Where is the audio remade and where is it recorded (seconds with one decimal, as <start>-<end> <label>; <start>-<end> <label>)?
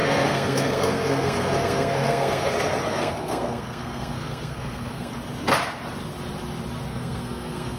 0.0-2.5 remade; 2.5-2.9 recorded; 2.9-5.1 remade; 5.1-6.9 recorded; 6.9-7.8 remade